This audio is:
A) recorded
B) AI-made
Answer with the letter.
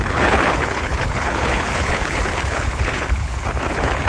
B